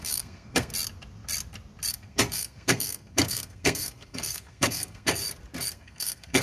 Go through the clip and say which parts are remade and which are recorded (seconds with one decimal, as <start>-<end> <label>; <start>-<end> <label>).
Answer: 0.0-0.7 remade; 0.7-1.9 recorded; 1.9-5.2 remade; 5.2-5.7 recorded; 5.7-6.4 remade